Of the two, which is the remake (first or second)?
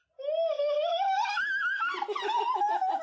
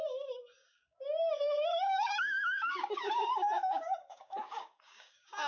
second